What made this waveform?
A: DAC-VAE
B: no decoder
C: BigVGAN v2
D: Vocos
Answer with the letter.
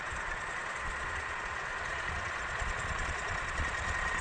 D